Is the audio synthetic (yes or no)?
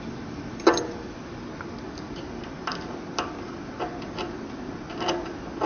no